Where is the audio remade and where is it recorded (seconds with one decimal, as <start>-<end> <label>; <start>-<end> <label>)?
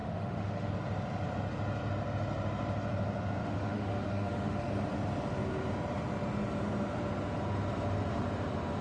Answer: 0.0-0.7 remade; 0.7-3.4 recorded; 3.4-4.7 remade; 4.7-8.8 recorded